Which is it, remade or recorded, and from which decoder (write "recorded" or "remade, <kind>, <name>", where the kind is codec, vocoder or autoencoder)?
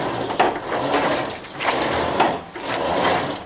recorded